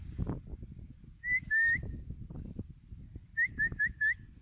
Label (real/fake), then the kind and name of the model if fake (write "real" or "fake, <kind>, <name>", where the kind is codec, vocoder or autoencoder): real